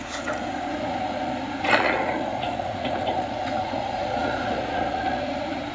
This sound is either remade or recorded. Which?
remade